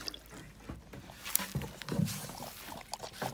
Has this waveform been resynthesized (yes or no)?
no